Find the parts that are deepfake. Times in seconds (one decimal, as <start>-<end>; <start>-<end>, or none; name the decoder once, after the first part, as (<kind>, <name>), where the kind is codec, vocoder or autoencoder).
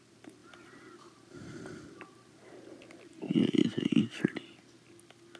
0.4-3.6 (vocoder, BigVGAN v2)